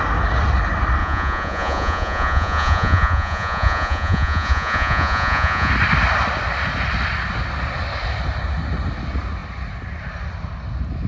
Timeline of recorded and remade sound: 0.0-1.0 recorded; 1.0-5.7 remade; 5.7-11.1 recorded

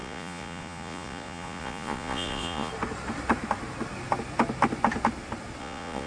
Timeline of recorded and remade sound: 0.0-2.7 remade; 2.7-5.6 recorded; 5.6-6.1 remade

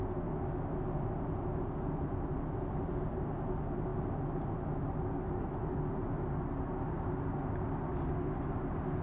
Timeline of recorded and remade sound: 0.0-9.0 recorded

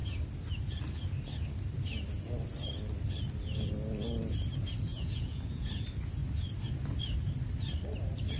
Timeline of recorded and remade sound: 0.0-4.9 recorded; 4.9-5.7 remade; 5.7-8.4 recorded

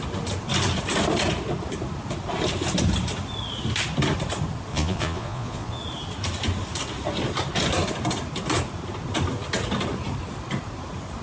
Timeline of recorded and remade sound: 0.0-4.7 recorded; 4.7-5.8 remade; 5.8-11.2 recorded

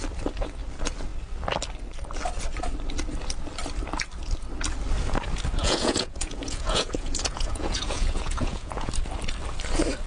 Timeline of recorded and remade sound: 0.0-5.6 recorded; 5.6-8.9 remade; 8.9-10.1 recorded

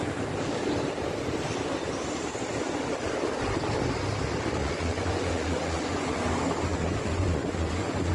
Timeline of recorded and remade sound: 0.0-4.6 recorded; 4.6-6.2 remade; 6.2-6.7 recorded; 6.7-8.1 remade